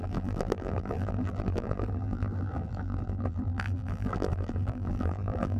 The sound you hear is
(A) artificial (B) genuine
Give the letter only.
A